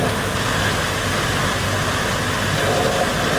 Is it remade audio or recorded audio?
recorded